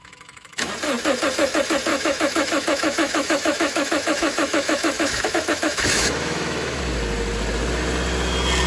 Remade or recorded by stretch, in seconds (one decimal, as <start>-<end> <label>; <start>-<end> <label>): 0.0-0.7 remade; 0.7-1.9 recorded; 1.9-6.8 remade; 6.8-8.7 recorded